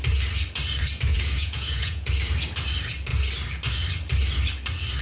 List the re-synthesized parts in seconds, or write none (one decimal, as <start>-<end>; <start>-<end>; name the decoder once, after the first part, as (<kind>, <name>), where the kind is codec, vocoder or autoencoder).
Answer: 1.1-2.1 (vocoder, Vocos)